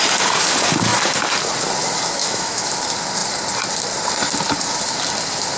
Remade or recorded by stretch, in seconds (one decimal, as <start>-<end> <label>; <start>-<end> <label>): 0.0-2.2 recorded; 2.2-2.7 remade; 2.7-5.6 recorded